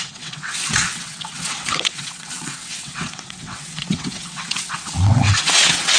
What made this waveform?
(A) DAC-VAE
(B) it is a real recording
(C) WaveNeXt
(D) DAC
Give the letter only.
C